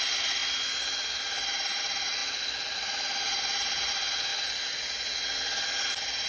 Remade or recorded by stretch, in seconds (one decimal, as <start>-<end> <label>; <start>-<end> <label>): 0.0-6.3 recorded